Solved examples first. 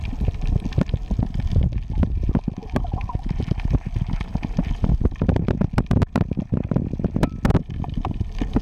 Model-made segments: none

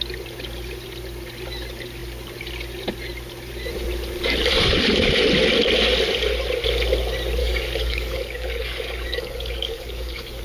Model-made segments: 7.4-10.4 (codec, DAC)

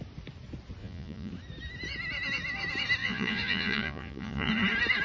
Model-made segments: 0.8-1.3 (vocoder, Vocos); 3.0-4.5